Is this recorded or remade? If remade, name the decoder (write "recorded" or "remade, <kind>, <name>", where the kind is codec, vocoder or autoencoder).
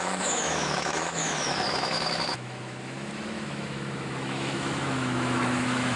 remade, autoencoder, DAC-VAE